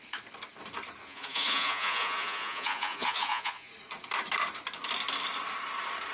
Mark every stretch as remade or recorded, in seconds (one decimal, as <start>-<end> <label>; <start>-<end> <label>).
0.0-1.0 recorded; 1.0-3.7 remade; 3.7-6.1 recorded